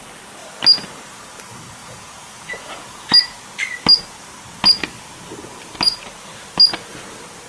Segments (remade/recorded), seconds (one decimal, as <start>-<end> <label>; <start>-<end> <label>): 0.0-1.8 recorded; 1.8-3.1 remade; 3.1-7.5 recorded